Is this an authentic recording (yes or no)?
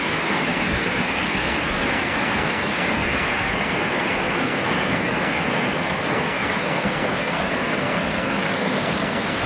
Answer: no